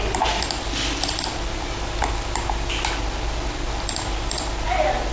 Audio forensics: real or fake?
real